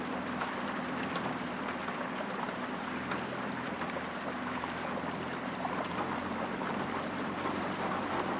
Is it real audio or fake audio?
fake